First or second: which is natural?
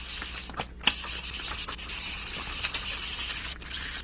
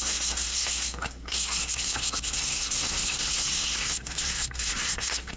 first